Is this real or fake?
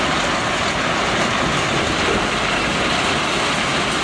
real